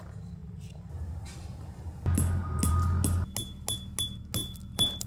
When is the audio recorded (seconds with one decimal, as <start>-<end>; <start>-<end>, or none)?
0.0-4.4